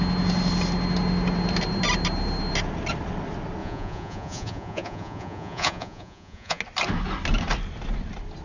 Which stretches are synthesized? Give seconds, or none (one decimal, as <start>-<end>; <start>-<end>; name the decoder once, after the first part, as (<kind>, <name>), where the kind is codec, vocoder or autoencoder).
3.6-6.6 (vocoder, Vocos)